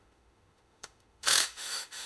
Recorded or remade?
remade